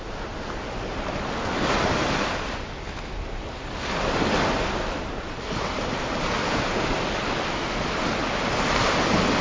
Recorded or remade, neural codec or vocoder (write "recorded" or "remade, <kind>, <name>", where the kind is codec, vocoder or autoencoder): recorded